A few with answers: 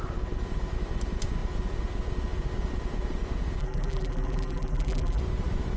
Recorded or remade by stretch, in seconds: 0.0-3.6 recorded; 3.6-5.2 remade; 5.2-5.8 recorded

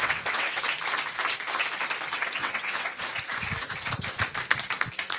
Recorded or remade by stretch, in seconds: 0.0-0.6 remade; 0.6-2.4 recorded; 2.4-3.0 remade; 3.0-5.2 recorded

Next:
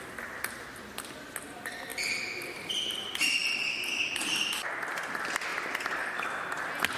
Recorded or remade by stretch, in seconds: 0.0-7.0 recorded